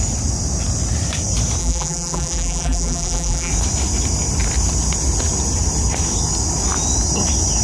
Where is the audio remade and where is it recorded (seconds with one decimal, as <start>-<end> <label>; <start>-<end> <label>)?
0.0-1.6 recorded; 1.6-3.5 remade; 3.5-7.6 recorded